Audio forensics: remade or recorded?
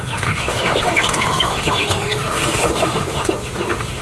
remade